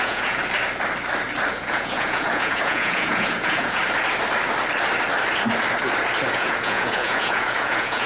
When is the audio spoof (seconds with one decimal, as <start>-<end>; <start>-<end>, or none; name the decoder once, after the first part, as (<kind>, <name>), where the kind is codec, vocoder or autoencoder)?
0.0-0.4 (vocoder, Vocos); 1.5-3.8; 6.3-8.1